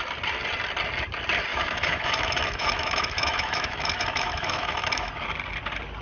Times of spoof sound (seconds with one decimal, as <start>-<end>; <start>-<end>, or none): 1.5-5.1